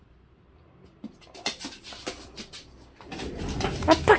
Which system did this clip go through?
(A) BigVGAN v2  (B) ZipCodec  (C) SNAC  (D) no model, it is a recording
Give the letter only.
D